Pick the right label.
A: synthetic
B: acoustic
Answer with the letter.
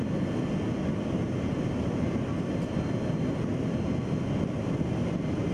B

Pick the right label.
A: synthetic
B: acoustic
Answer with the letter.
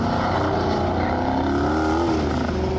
B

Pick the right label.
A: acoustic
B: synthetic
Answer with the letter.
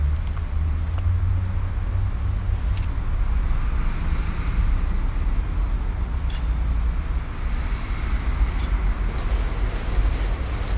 A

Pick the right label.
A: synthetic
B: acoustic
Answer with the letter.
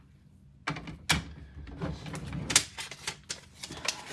B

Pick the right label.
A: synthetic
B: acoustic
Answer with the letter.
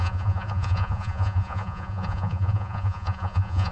A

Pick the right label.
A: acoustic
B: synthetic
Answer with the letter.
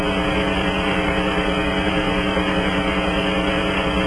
B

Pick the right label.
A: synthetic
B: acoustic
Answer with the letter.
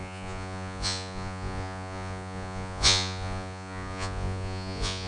A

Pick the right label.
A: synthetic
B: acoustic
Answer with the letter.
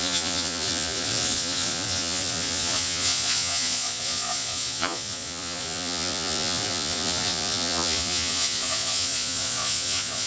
A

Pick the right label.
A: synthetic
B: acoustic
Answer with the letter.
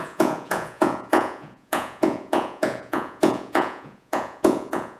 A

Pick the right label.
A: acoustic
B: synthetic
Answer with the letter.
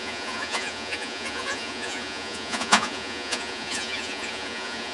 B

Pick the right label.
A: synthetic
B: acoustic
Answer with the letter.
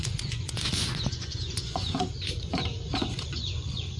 A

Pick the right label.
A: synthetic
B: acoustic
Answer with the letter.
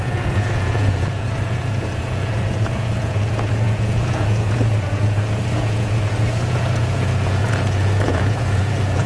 A